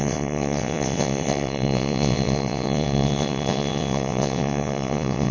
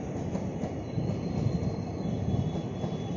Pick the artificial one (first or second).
first